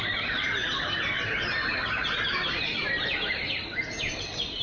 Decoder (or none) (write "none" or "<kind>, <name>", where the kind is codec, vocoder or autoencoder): vocoder, BigVGAN v2